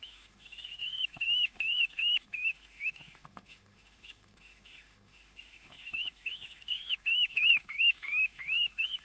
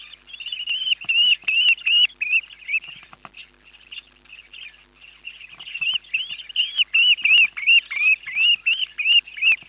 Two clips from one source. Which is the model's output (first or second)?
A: first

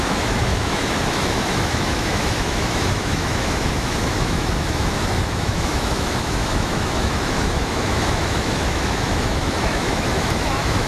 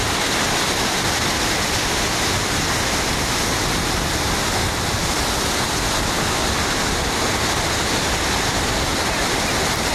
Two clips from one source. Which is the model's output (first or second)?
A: first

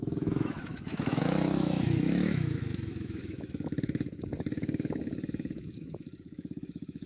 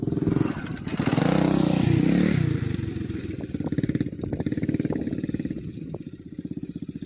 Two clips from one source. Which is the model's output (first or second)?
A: first